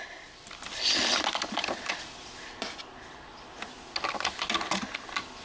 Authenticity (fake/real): real